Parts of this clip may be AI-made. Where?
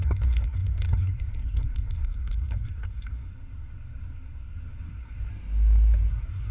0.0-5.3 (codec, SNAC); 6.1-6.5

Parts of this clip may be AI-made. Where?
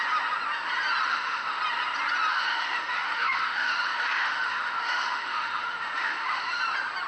1.1-1.6 (autoencoder, DAC-VAE); 2.3-6.6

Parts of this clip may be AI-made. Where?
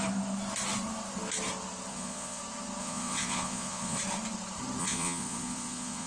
1.9-2.4 (vocoder, Vocos); 2.8-4.0; 4.8-6.1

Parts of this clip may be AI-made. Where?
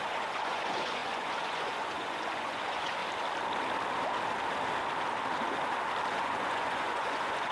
0.0-3.0 (vocoder, Vocos); 6.1-7.5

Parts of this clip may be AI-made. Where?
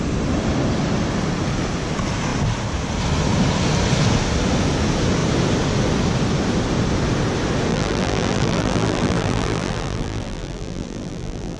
7.7-11.6 (vocoder, BigVGAN v2)